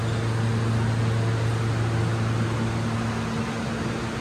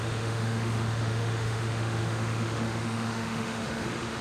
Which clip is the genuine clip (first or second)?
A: first